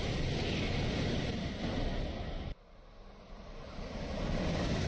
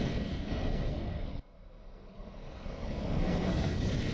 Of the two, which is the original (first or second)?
first